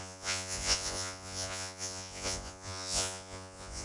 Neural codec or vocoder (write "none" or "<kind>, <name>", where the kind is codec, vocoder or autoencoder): vocoder, Vocos